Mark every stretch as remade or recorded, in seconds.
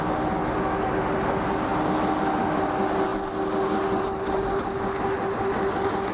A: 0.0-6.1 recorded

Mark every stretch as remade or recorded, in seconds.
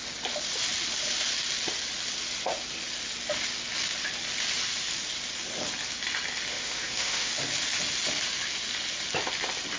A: 0.0-6.5 recorded; 6.5-7.3 remade; 7.3-9.8 recorded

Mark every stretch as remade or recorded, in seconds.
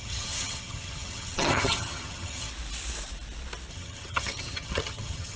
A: 0.0-2.5 remade; 2.5-3.7 recorded; 3.7-5.4 remade